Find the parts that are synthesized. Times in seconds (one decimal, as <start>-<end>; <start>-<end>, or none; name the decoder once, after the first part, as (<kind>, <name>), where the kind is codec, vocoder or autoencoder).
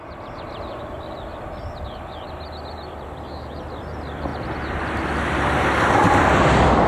0.0-4.3 (vocoder, BigVGAN v2); 4.8-6.9